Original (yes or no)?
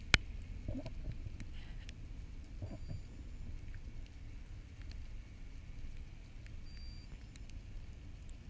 yes